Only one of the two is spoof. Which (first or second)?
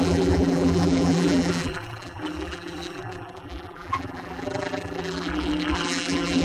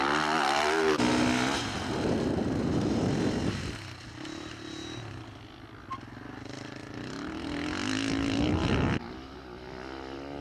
first